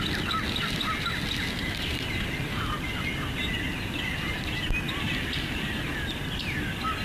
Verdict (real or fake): real